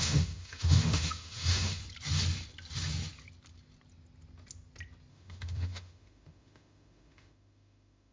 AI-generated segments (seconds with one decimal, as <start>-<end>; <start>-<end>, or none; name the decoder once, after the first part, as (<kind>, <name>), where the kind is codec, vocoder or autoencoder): 0.0-1.8 (autoencoder, DAC-VAE); 5.1-8.1